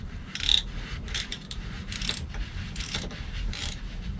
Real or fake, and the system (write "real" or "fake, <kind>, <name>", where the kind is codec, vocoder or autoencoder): fake, vocoder, BigVGAN v2